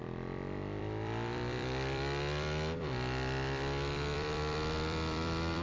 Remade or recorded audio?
remade